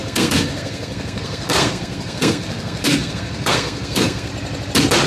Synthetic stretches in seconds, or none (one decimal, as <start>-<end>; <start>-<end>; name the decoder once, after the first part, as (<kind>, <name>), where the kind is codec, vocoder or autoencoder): 0.0-4.3 (codec, SNAC)